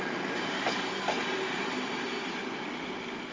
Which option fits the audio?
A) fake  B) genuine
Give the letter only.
B